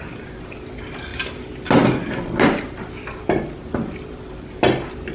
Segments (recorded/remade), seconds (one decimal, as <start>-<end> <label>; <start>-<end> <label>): 0.0-5.1 recorded